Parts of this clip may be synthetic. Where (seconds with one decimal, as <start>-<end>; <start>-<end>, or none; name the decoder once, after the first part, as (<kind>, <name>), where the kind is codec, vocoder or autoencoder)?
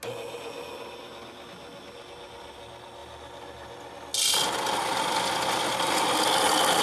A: none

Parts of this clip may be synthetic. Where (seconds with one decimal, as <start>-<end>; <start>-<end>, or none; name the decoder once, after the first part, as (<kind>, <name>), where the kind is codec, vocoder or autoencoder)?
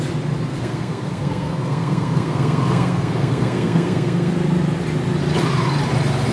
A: 0.5-4.3 (codec, SNAC)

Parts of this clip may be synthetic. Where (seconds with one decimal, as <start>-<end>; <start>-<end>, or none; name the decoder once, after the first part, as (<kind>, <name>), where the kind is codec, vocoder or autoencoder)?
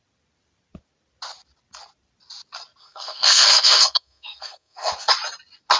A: 2.8-4.9 (codec, SNAC)